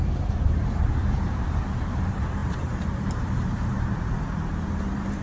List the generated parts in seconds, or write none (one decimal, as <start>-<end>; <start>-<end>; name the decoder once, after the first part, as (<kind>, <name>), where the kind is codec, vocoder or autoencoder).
0.0-5.2 (vocoder, BigVGAN v2)